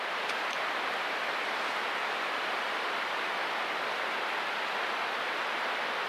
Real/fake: fake